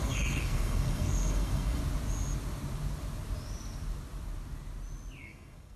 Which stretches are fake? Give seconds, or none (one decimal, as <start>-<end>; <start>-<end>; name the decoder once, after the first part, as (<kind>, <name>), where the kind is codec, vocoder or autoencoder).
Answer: 0.0-1.8 (codec, SNAC); 5.2-5.8